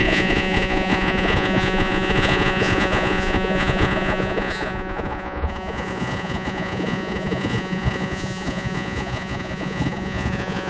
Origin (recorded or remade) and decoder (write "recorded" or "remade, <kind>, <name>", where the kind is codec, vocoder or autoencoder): remade, vocoder, Vocos